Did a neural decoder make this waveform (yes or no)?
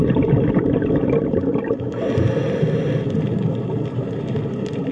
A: no